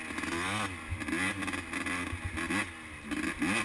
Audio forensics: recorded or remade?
recorded